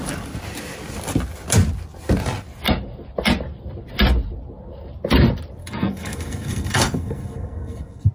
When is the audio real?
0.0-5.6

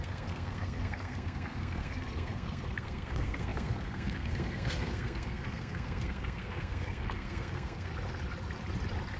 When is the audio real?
7.9-9.2